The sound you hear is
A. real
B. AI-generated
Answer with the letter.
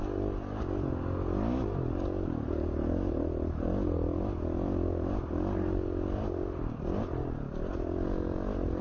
A